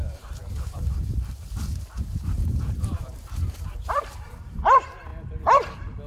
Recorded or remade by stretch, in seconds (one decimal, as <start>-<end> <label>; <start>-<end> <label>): 0.0-5.1 remade; 5.1-6.1 recorded